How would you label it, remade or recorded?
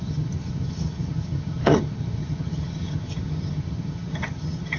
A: remade